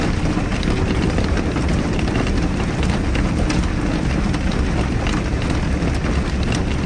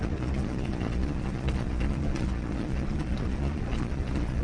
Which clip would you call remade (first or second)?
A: second